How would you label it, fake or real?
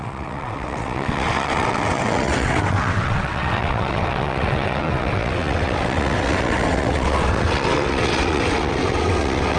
fake